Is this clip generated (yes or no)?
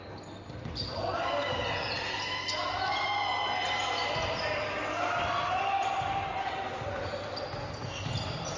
no